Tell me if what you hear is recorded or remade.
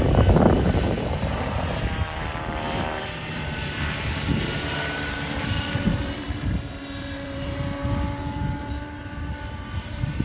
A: remade